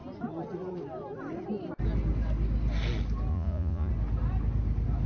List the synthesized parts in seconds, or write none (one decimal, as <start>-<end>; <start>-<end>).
3.3-3.9